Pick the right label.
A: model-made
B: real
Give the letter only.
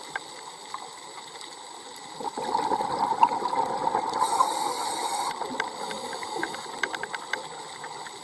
B